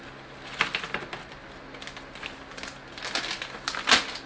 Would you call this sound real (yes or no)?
yes